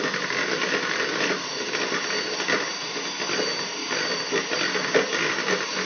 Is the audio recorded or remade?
recorded